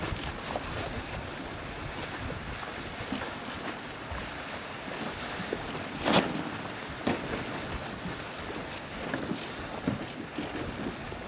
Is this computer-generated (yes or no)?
no